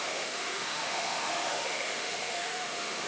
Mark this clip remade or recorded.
remade